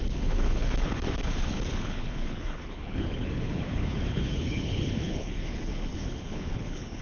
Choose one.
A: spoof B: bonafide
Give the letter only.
A